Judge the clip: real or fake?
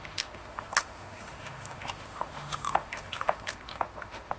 fake